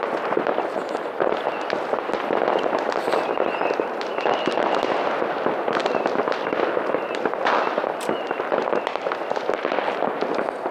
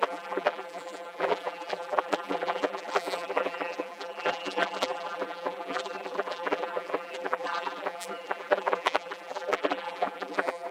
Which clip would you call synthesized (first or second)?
second